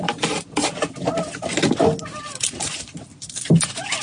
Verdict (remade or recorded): recorded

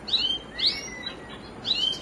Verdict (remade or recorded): recorded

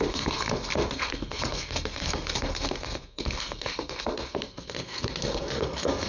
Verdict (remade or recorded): remade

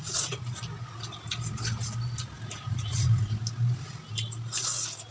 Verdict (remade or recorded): recorded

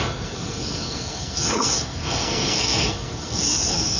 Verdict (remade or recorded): remade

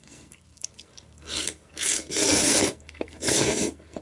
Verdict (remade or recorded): remade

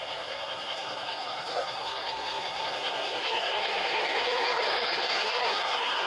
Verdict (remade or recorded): remade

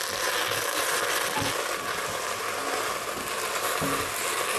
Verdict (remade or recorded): recorded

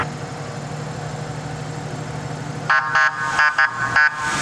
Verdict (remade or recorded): recorded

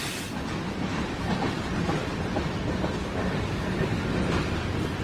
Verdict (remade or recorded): recorded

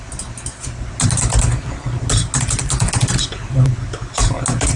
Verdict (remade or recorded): recorded